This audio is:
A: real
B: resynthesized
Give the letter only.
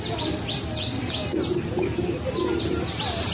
A